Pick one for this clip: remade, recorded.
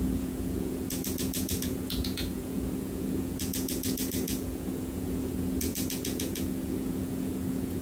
remade